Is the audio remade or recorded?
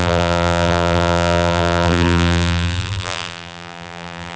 remade